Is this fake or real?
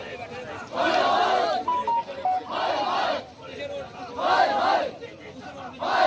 real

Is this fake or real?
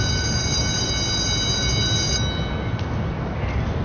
real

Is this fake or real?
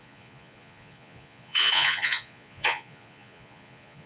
fake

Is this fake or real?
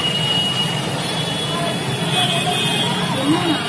real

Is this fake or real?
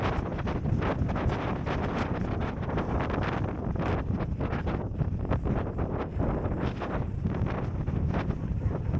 real